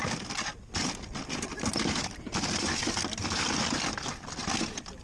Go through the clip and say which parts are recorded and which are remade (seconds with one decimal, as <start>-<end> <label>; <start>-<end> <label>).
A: 0.0-5.0 recorded